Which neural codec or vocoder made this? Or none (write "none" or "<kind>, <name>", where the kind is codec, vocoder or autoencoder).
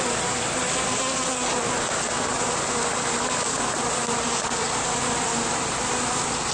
none